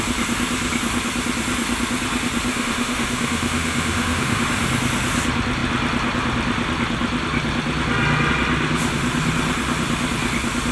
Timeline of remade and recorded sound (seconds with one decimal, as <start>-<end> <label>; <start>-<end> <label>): 0.0-2.5 recorded; 2.5-4.4 remade; 4.4-10.7 recorded